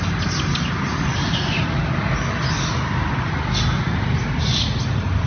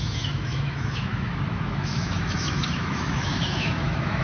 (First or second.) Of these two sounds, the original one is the first